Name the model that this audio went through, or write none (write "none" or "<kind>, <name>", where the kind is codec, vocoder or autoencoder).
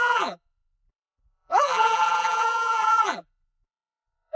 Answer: vocoder, BigVGAN v2